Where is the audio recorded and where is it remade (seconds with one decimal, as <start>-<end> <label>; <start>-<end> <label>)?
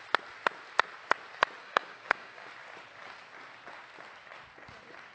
0.0-1.6 recorded; 1.6-2.5 remade; 2.5-5.1 recorded